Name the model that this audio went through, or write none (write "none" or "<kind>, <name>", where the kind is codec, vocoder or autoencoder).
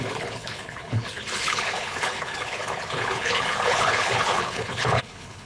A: codec, HILCodec